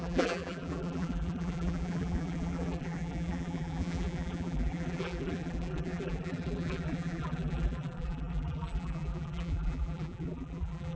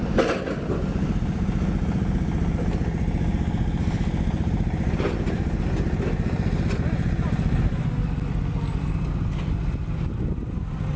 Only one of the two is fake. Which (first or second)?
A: first